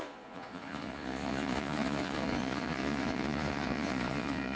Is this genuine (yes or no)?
no